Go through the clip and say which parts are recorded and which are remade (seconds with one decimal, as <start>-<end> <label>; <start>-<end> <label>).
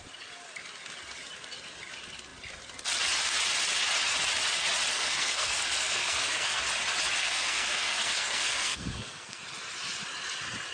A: 0.0-4.9 recorded; 4.9-6.6 remade; 6.6-7.2 recorded; 7.2-9.4 remade; 9.4-10.7 recorded